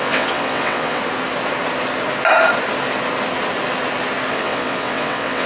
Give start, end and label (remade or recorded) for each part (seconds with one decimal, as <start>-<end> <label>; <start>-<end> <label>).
0.0-1.0 remade; 1.0-4.3 recorded; 4.3-5.5 remade